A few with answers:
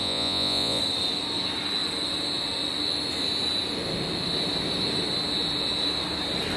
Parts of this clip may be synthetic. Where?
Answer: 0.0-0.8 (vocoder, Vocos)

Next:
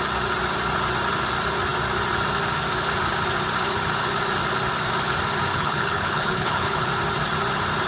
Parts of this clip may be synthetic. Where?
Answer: 5.5-6.9 (codec, HILCodec)

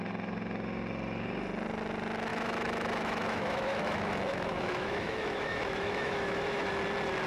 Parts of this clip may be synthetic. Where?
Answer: 2.3-6.7 (autoencoder, DAC-VAE)

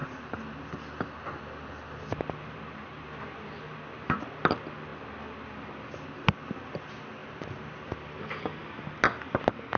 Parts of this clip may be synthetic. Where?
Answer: none

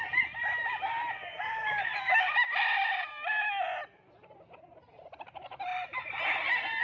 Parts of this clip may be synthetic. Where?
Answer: none

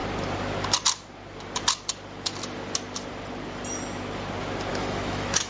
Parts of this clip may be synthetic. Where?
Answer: 4.7-5.5 (autoencoder, DAC-VAE)

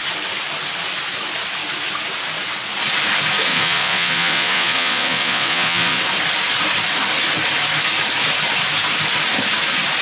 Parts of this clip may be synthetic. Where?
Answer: 3.5-6.0 (vocoder, Vocos)

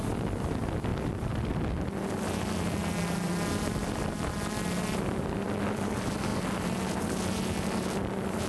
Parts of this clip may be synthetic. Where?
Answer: 0.9-1.7 (vocoder, BigVGAN v2); 2.8-4.1; 6.3-7.0